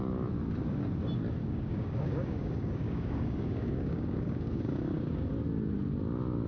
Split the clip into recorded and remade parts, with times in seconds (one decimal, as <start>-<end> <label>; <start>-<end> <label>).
0.0-1.4 recorded; 1.4-5.3 remade; 5.3-6.5 recorded